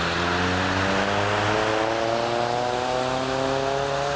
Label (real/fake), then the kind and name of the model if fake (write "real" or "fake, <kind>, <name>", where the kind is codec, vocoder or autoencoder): real